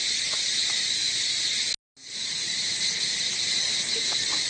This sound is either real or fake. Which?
real